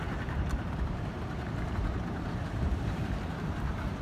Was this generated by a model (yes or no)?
yes